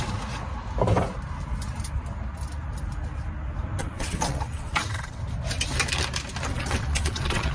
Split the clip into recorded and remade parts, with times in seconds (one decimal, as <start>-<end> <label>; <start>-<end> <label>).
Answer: 0.0-3.8 recorded; 3.8-5.2 remade; 5.2-6.5 recorded; 6.5-7.5 remade